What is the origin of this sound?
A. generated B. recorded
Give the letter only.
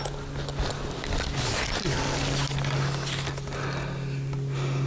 B